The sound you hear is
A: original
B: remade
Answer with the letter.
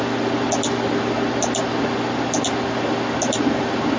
A